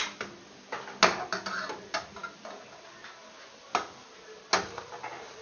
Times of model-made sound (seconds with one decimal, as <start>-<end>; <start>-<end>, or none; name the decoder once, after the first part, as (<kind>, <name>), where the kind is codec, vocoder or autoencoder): none